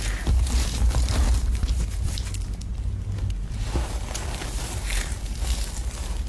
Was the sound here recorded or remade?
remade